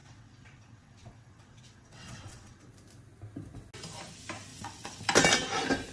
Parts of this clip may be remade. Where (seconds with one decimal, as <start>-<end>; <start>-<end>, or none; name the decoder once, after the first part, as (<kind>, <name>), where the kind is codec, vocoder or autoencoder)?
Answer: 0.0-2.7 (vocoder, WaveNeXt); 4.5-5.0